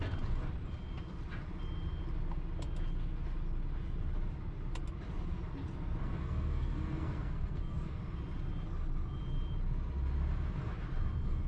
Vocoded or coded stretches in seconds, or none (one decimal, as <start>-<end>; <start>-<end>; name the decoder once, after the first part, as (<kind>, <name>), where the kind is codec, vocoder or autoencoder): 6.0-8.0 (codec, SNAC)